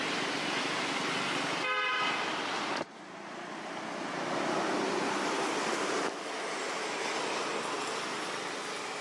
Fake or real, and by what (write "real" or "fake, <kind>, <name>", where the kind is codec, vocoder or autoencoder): real